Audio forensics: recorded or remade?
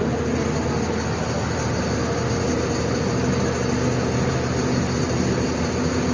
recorded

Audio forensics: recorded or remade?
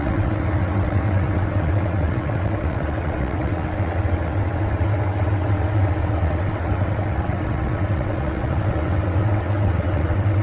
remade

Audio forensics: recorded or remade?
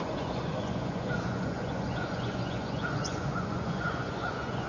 remade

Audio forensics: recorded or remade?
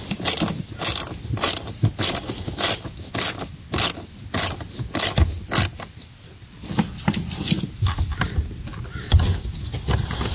recorded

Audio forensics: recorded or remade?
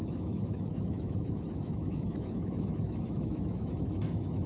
remade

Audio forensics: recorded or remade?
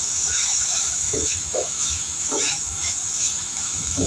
remade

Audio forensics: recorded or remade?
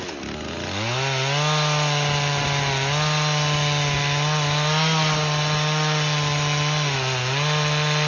recorded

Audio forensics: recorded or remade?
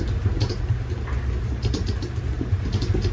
recorded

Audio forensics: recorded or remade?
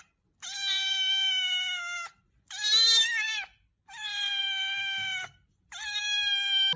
recorded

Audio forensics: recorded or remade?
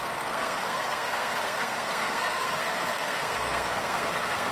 remade